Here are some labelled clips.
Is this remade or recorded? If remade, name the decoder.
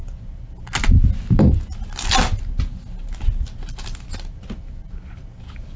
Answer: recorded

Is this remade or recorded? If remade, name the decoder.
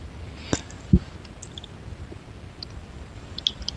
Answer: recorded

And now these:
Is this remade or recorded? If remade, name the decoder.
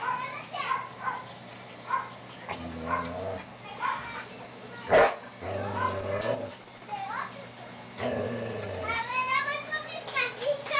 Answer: recorded